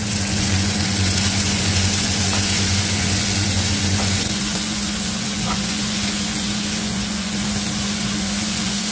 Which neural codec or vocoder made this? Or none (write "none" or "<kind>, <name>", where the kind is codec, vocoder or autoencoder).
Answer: vocoder, Vocos